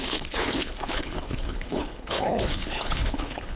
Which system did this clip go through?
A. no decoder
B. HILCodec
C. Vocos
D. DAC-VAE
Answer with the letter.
B